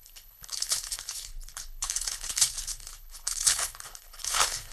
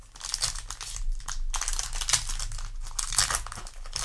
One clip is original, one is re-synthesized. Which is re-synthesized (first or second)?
first